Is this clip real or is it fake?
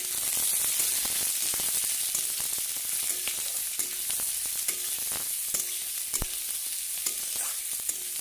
real